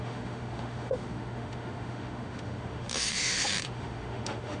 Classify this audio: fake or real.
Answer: fake